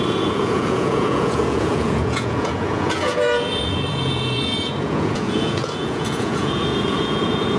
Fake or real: fake